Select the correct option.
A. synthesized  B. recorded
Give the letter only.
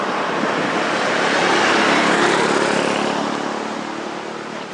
B